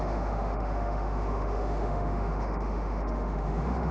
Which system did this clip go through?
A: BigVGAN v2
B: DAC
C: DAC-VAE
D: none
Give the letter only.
C